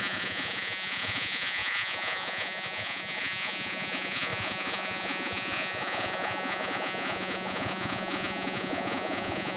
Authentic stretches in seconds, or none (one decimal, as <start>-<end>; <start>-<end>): none